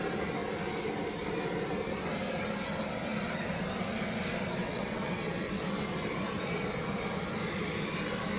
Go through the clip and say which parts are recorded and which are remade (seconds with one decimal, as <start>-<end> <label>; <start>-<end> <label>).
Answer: 0.0-4.6 recorded; 4.6-5.6 remade; 5.6-8.4 recorded

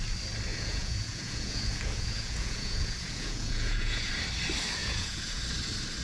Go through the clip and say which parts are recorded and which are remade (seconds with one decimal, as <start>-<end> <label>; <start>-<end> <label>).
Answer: 0.0-0.5 recorded; 0.5-4.1 remade; 4.1-4.8 recorded; 4.8-5.4 remade; 5.4-6.0 recorded